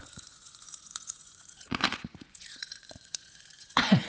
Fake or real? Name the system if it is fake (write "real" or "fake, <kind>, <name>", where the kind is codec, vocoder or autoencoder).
fake, vocoder, Vocos